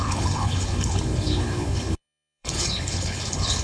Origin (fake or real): fake